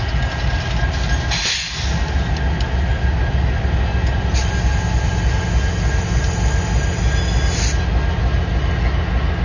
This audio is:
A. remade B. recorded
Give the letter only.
B